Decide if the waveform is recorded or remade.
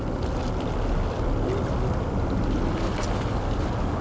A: recorded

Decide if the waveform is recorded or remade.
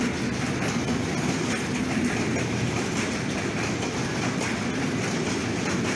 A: recorded